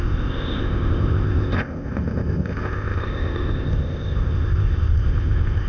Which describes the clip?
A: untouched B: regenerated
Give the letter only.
B